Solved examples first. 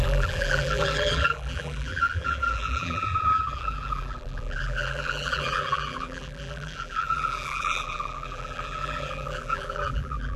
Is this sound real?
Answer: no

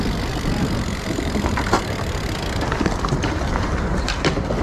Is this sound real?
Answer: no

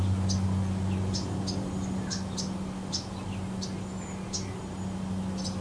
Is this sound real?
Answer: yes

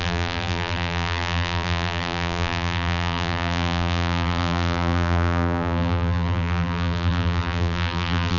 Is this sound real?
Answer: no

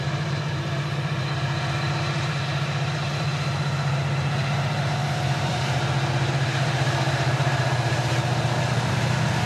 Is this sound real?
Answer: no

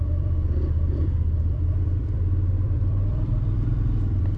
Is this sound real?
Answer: no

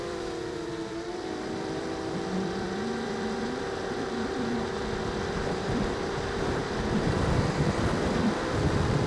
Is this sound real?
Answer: no